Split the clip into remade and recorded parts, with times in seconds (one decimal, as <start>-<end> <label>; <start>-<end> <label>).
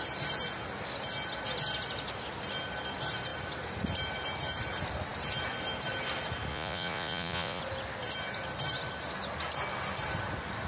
0.0-6.5 recorded; 6.5-7.6 remade; 7.6-10.7 recorded